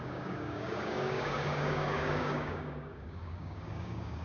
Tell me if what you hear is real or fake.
fake